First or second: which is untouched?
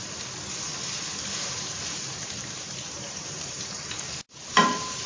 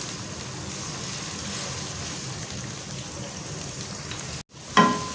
second